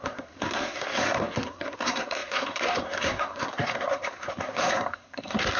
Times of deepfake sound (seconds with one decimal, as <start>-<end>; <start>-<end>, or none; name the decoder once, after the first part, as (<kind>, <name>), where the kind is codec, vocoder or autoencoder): 0.0-5.6 (codec, SNAC)